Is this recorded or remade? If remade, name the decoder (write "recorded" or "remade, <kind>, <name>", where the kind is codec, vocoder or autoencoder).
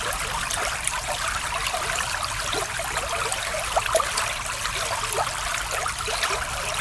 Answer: recorded